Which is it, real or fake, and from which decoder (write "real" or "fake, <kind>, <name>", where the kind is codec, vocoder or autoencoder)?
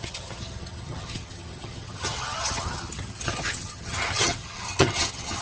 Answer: fake, vocoder, HiFi-GAN